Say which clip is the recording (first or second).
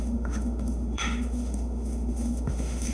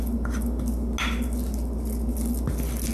second